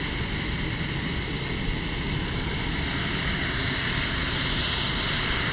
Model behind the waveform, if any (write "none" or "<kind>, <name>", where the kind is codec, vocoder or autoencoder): none